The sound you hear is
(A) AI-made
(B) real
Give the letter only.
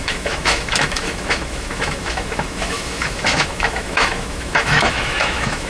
A